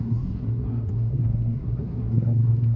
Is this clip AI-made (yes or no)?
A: yes